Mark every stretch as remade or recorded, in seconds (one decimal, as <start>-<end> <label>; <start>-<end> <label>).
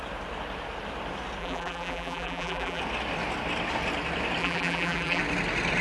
0.0-1.4 recorded; 1.4-2.8 remade; 2.8-4.4 recorded; 4.4-5.2 remade; 5.2-5.8 recorded